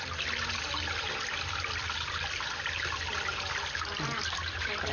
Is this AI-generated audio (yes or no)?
no